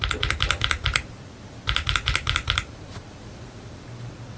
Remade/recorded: remade